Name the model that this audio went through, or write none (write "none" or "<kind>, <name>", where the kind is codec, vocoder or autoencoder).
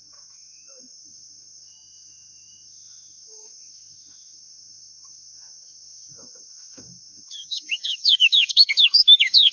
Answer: autoencoder, DAC-VAE